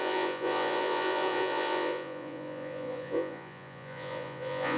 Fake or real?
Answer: fake